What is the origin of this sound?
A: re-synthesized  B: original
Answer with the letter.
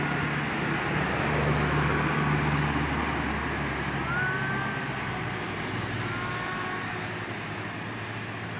B